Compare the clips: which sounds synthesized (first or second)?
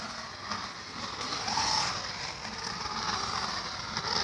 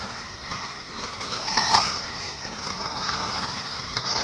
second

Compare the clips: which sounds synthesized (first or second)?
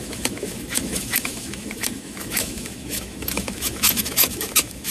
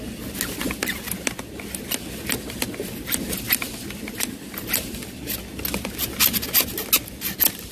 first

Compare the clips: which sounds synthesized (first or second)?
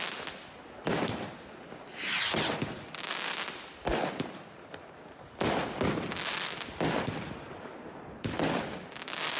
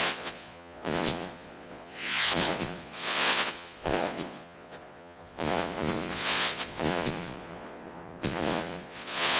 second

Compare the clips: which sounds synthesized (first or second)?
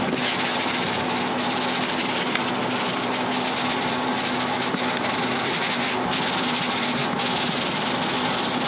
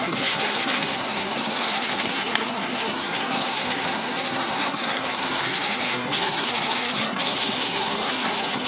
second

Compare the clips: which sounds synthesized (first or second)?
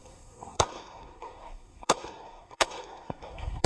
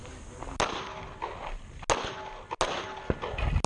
first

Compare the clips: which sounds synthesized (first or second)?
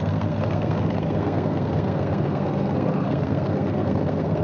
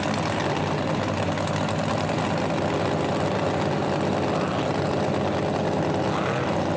first